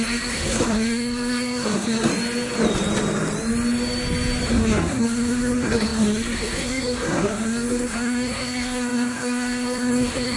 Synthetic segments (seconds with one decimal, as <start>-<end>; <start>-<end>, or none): 0.0-2.1; 4.5-10.4